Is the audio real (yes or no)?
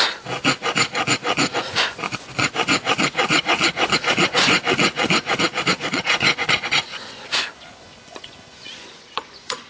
no